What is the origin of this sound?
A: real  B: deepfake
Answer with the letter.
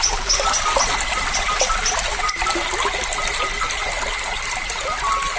A